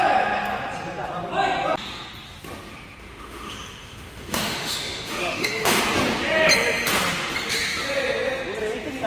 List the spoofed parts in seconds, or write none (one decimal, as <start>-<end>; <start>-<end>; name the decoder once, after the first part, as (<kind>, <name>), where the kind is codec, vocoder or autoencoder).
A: 3.0-5.8 (autoencoder, DAC-VAE)